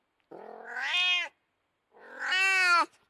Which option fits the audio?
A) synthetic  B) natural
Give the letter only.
B